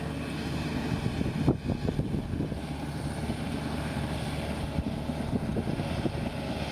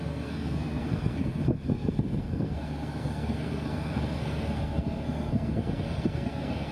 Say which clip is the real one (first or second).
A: first